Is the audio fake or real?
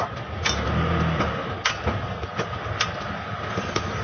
real